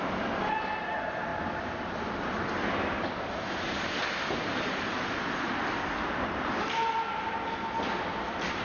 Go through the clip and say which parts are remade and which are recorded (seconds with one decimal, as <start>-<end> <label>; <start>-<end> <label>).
0.0-8.6 recorded